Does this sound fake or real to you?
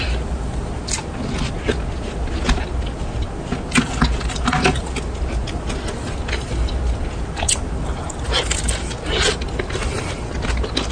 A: real